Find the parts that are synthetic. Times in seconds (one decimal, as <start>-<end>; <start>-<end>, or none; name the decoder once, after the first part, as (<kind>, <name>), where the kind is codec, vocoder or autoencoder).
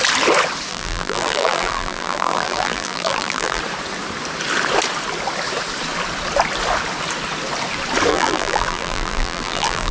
0.7-3.6 (vocoder, BigVGAN v2); 8.1-9.9